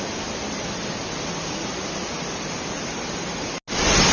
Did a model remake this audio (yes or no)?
no